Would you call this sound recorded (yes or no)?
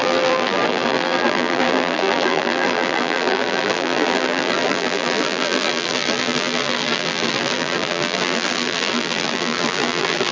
no